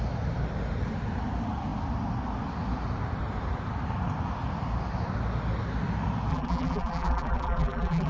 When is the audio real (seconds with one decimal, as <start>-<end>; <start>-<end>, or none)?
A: 0.0-6.3